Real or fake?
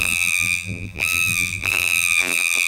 fake